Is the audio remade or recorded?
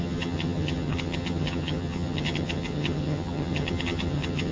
remade